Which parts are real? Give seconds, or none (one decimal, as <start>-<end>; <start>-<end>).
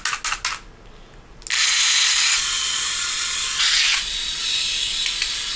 0.0-1.6; 5.0-5.6